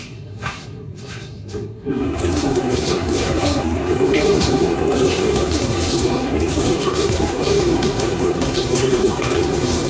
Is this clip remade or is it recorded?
remade